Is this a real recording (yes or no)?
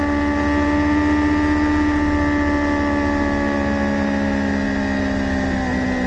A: yes